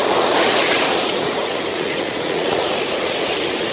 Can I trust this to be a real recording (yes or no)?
no